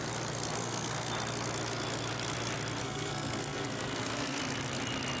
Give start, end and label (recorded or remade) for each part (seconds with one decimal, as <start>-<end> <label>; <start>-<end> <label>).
0.0-0.6 recorded; 0.6-1.1 remade; 1.1-2.8 recorded; 2.8-4.4 remade; 4.4-5.2 recorded